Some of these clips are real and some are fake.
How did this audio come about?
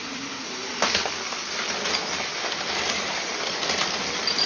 real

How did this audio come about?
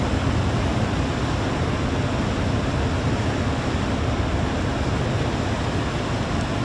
real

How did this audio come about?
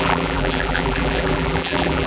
fake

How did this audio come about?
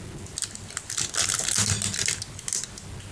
real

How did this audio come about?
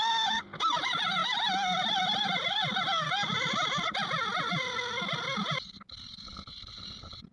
real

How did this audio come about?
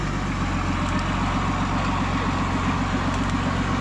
real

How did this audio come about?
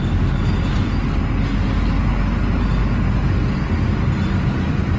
real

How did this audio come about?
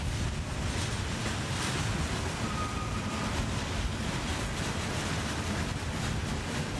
real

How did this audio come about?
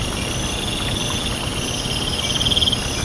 real